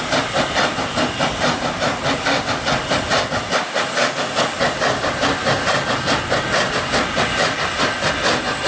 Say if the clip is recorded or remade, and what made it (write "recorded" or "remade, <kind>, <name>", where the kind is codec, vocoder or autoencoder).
recorded